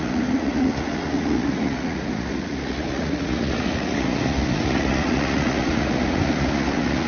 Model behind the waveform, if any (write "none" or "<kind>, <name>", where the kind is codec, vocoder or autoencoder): vocoder, Vocos